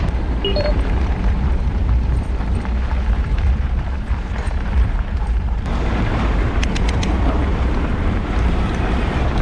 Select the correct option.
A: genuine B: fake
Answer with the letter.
B